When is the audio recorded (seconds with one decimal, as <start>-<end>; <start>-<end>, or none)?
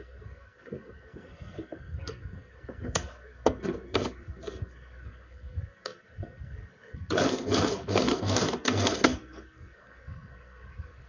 none